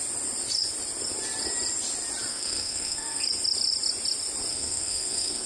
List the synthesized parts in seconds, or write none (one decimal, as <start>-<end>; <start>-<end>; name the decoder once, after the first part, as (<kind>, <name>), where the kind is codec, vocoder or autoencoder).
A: 2.3-3.2 (codec, SNAC); 4.5-5.5